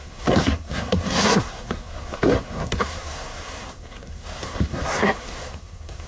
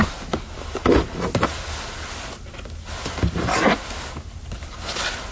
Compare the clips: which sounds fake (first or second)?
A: first